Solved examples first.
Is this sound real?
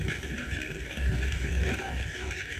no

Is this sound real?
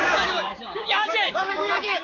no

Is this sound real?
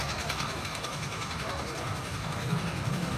no